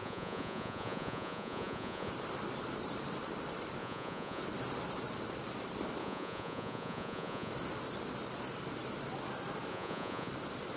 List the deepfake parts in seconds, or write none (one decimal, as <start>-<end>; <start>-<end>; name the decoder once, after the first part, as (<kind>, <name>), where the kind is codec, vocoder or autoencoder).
0.0-2.1 (vocoder, Vocos); 3.8-4.4; 6.0-7.5; 9.7-10.3